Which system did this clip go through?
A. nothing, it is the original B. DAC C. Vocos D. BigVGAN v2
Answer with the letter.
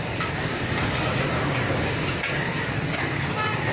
B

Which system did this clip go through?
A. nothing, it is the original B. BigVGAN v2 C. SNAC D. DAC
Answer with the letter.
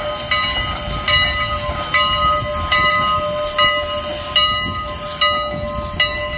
A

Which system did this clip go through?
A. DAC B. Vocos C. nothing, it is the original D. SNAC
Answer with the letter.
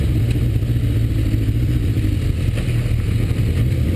C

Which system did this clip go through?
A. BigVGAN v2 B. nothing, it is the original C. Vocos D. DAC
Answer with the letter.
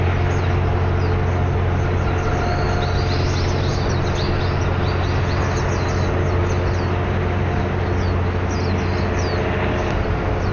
B